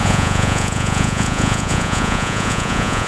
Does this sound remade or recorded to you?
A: remade